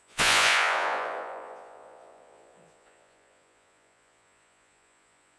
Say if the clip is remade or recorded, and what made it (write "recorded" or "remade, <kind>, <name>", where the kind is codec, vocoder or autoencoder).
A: remade, vocoder, Vocos